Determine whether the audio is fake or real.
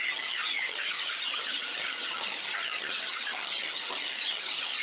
fake